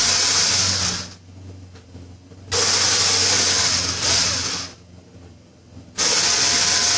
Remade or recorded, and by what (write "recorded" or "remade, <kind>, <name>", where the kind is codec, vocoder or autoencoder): recorded